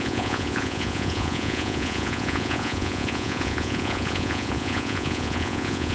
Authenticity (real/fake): fake